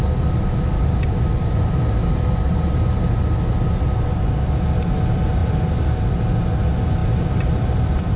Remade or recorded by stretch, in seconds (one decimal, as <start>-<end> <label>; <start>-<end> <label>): 0.0-8.2 recorded